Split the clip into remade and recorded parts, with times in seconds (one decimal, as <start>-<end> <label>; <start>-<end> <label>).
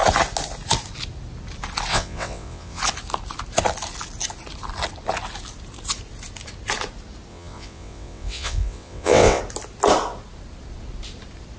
0.0-1.9 recorded; 1.9-2.8 remade; 2.8-7.3 recorded; 7.3-9.4 remade; 9.4-11.6 recorded